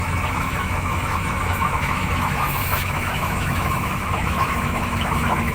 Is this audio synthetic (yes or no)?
yes